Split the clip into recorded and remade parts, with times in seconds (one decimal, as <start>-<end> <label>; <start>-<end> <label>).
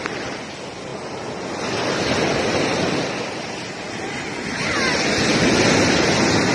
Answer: 0.0-6.5 recorded